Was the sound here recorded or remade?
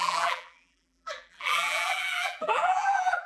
remade